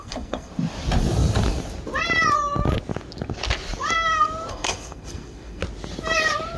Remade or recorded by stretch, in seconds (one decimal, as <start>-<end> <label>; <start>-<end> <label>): 0.0-0.5 remade; 0.5-4.5 recorded; 4.5-5.6 remade; 5.6-6.6 recorded